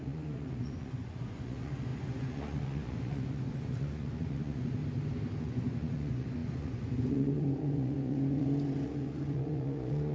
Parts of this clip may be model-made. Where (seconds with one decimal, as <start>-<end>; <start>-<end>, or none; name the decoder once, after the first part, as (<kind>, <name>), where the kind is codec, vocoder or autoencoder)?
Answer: 0.0-4.8 (vocoder, Vocos); 5.4-10.1